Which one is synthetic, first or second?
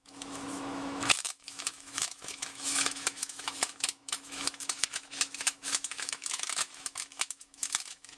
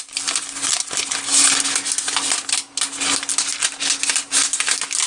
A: first